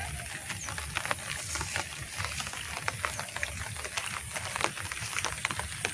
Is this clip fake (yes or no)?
no